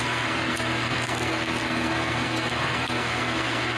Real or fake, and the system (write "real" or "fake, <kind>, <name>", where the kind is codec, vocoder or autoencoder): fake, codec, SNAC